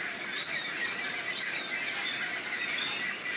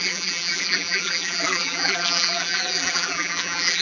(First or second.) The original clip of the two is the first